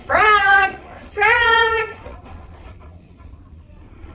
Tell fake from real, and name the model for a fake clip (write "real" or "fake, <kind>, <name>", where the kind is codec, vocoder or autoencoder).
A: fake, vocoder, Vocos